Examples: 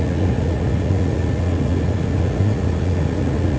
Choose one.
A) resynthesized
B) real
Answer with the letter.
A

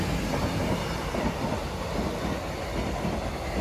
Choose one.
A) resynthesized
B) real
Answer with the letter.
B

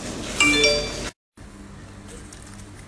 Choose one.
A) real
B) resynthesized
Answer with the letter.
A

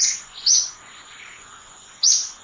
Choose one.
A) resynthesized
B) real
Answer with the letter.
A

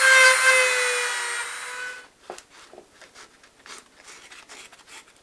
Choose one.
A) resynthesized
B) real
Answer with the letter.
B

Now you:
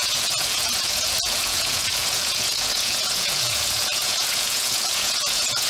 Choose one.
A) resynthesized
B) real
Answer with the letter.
A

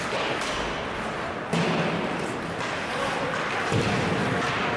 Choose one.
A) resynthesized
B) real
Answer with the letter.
B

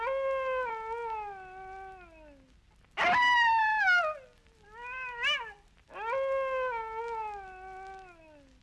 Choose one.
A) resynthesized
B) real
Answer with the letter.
B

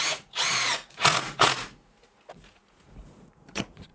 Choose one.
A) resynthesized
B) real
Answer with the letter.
A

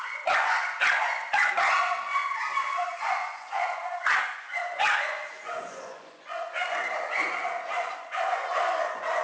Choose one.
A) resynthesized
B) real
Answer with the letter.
A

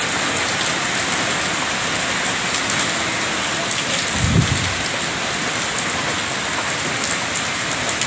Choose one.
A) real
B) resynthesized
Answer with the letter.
A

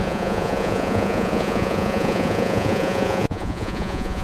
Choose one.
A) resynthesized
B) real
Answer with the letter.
A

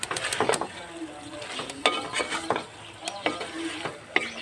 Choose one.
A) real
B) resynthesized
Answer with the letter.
A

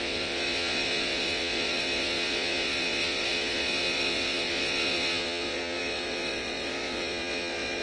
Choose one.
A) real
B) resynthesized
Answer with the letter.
B